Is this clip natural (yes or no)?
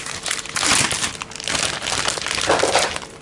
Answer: yes